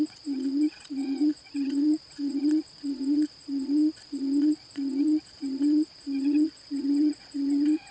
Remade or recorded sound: remade